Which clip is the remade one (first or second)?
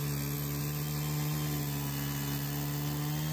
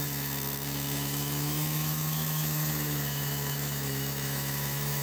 second